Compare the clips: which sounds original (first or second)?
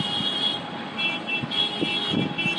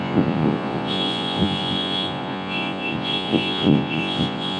first